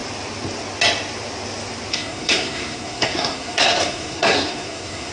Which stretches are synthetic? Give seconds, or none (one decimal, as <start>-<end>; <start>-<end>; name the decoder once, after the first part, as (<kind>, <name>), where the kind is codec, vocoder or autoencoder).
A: 1.9-5.1 (codec, SNAC)